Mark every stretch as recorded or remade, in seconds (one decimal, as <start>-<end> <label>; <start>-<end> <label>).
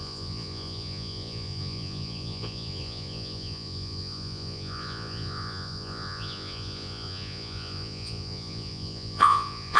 0.0-9.8 remade